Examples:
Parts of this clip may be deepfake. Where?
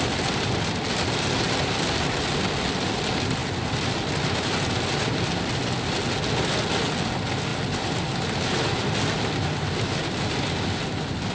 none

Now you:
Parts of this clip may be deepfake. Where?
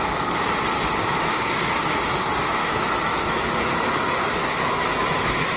0.9-1.6 (autoencoder, DAC-VAE); 2.6-5.6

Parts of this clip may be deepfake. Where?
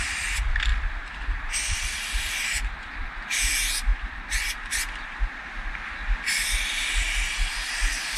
0.7-2.3 (vocoder, BigVGAN v2)